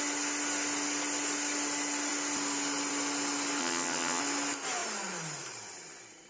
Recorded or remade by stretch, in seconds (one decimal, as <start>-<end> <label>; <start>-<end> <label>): 0.0-3.6 recorded; 3.6-4.2 remade; 4.2-6.3 recorded